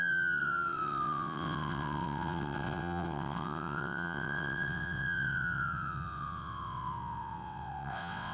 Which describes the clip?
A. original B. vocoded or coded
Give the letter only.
B